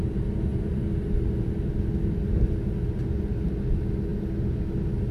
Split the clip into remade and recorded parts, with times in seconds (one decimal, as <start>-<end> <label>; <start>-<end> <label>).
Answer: 0.0-5.1 recorded